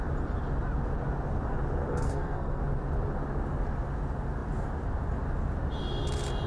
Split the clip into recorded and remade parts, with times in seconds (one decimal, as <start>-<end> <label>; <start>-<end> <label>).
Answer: 0.0-1.9 recorded; 1.9-2.6 remade; 2.6-6.5 recorded